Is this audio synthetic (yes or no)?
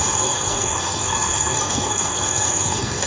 yes